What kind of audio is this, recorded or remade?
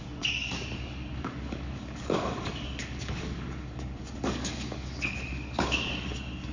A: remade